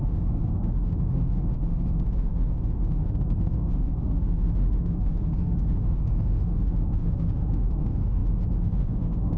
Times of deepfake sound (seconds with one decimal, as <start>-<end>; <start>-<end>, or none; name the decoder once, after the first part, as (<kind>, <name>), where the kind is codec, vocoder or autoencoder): 0.0-9.4 (autoencoder, DAC-VAE)